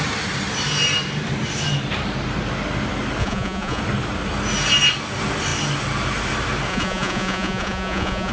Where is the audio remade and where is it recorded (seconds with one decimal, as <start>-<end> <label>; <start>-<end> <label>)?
0.0-3.2 recorded; 3.2-3.8 remade; 3.8-6.7 recorded; 6.7-8.3 remade

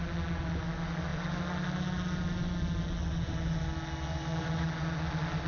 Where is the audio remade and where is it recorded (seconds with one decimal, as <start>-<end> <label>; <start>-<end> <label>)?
0.0-5.5 recorded

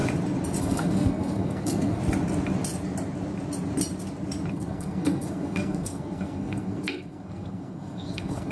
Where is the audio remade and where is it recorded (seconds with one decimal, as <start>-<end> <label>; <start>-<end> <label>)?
0.0-0.6 recorded; 0.6-2.0 remade; 2.0-4.5 recorded; 4.5-8.5 remade

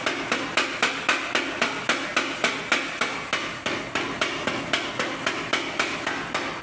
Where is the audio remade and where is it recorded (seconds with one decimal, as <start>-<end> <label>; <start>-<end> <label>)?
0.0-6.6 recorded

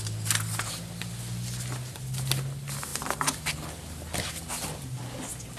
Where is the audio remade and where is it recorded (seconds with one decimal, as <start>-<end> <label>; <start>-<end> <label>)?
0.0-5.6 recorded

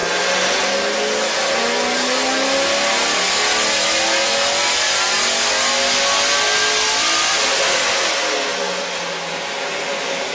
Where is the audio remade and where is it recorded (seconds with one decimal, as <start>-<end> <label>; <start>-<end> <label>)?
0.0-10.3 recorded

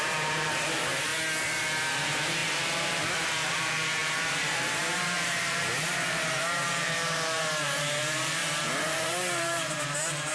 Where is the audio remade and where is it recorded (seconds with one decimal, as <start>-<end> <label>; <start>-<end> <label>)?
0.0-1.1 remade; 1.1-1.9 recorded; 1.9-8.4 remade; 8.4-9.0 recorded; 9.0-10.3 remade